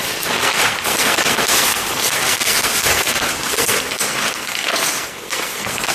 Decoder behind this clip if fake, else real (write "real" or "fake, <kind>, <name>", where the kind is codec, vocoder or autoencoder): fake, codec, SNAC